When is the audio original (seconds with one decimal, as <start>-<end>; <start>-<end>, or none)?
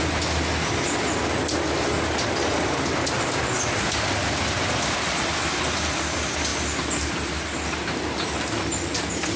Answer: 0.0-9.4